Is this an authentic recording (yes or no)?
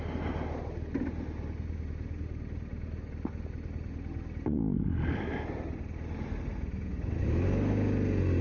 yes